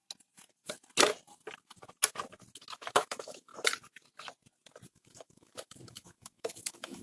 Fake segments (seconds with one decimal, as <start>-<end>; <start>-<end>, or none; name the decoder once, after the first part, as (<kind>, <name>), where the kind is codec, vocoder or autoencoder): 2.9-3.5 (autoencoder, DAC-VAE); 4.9-7.0